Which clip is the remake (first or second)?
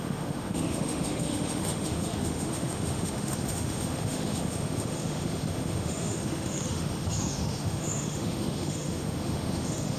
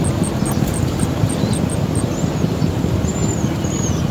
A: first